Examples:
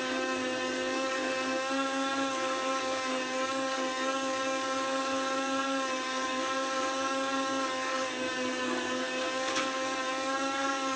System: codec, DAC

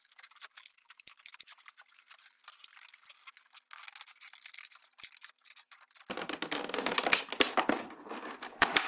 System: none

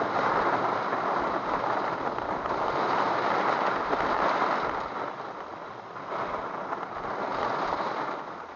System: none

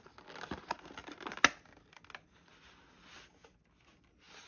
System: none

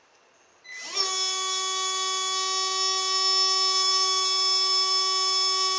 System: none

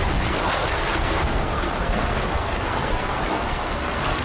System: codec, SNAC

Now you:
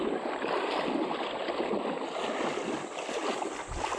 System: none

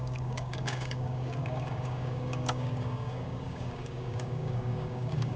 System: codec, DAC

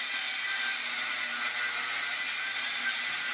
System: none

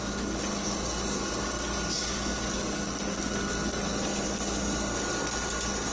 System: none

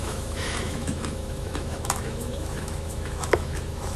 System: autoencoder, DAC-VAE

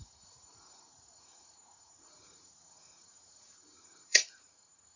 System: vocoder, Vocos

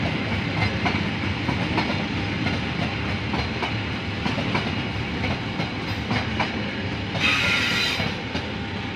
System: none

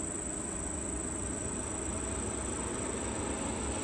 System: none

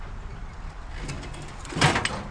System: none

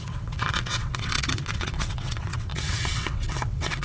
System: vocoder, WaveNeXt